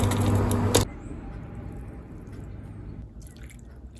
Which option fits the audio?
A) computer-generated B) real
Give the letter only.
B